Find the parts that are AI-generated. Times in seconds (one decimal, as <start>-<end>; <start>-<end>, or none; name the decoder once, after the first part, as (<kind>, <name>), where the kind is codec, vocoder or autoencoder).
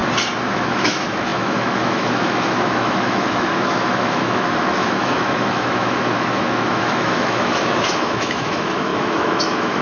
0.5-9.8 (autoencoder, DAC-VAE)